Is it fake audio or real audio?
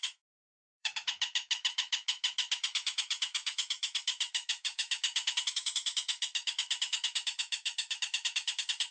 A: fake